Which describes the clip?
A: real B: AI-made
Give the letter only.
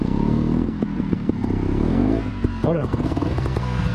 B